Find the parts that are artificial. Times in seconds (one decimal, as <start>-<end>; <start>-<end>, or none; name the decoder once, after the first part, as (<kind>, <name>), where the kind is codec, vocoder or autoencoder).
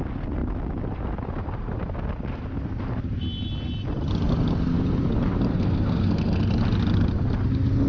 5.5-6.5 (codec, SNAC)